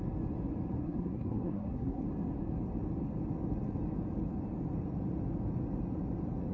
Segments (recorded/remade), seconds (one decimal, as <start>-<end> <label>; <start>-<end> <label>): 0.0-0.8 recorded; 0.8-2.0 remade; 2.0-6.5 recorded

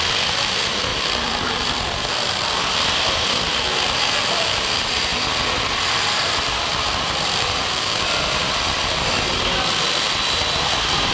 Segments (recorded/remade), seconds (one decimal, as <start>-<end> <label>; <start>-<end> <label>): 0.0-0.9 recorded; 0.9-4.0 remade; 4.0-5.1 recorded; 5.1-9.3 remade; 9.3-11.1 recorded

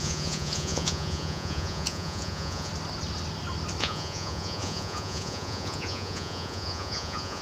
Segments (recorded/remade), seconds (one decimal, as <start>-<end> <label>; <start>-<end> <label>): 0.0-2.7 remade; 2.7-3.8 recorded; 3.8-7.4 remade

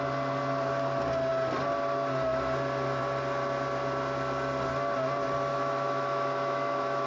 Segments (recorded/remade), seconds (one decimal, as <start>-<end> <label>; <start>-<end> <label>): 0.0-5.5 recorded; 5.5-7.1 remade

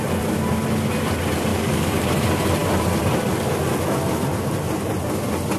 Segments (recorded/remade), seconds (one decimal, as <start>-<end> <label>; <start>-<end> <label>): 0.0-1.5 recorded; 1.5-2.0 remade; 2.0-5.6 recorded

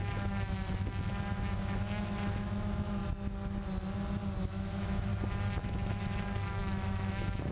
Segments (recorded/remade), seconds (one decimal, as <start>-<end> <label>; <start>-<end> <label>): 0.0-3.0 remade; 3.0-4.4 recorded; 4.4-5.1 remade; 5.1-5.6 recorded; 5.6-7.5 remade

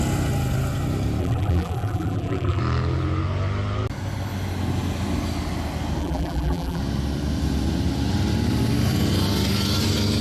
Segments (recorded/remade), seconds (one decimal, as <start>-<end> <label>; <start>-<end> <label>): 0.0-1.2 recorded; 1.2-2.6 remade; 2.6-6.0 recorded; 6.0-6.8 remade; 6.8-10.2 recorded